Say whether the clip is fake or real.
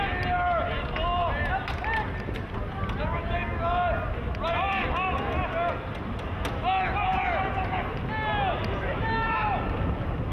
real